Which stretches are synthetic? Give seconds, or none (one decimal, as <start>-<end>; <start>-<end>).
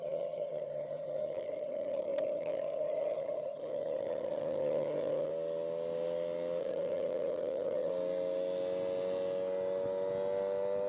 0.0-5.3; 6.6-7.9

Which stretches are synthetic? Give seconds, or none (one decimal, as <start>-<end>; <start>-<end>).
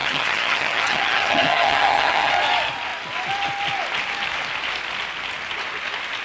0.0-2.3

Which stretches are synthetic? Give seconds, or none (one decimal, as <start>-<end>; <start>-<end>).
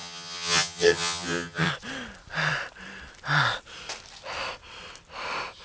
0.0-1.7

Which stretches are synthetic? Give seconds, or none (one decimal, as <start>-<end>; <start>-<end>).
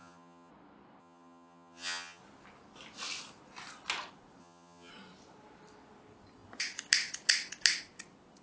0.0-0.5; 1.0-2.2; 4.4-4.9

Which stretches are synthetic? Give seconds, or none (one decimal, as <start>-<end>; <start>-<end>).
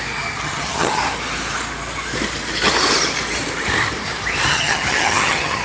0.4-1.0; 4.5-5.6